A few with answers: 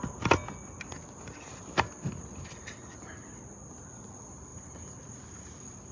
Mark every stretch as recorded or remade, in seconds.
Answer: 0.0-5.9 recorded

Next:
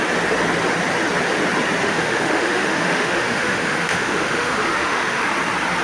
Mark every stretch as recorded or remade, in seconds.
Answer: 0.0-1.8 recorded; 1.8-5.3 remade; 5.3-5.8 recorded

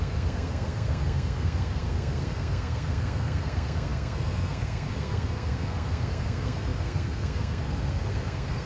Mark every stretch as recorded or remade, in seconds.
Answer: 0.0-8.7 remade

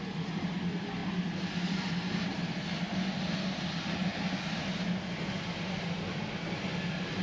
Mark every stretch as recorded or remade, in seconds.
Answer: 0.0-7.2 recorded

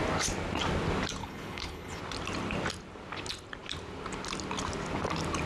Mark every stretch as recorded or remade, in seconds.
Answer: 0.0-1.2 recorded; 1.2-2.0 remade; 2.0-5.5 recorded

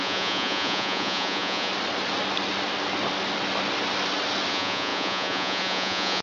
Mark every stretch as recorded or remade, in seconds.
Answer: 0.0-1.7 remade; 1.7-4.5 recorded; 4.5-6.2 remade